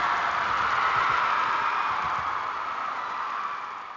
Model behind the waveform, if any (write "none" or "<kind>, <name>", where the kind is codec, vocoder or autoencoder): none